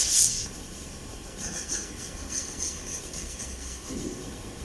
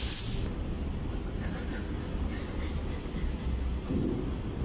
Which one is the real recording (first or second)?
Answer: second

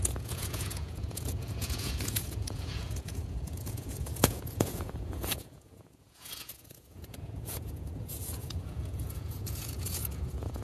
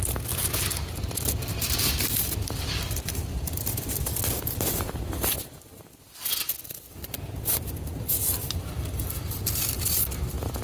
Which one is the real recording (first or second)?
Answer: second